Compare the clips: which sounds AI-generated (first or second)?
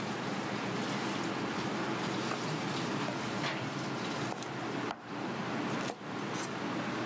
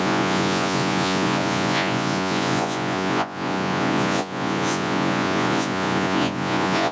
second